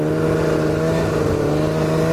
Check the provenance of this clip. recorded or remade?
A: recorded